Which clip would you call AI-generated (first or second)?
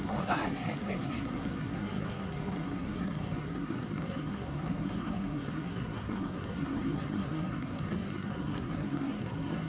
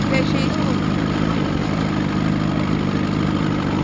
first